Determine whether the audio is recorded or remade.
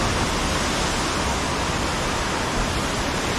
recorded